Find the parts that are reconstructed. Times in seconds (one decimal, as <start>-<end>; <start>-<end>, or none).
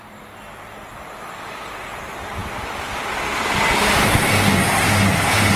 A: none